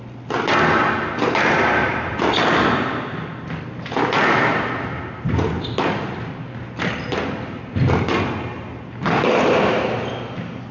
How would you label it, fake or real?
real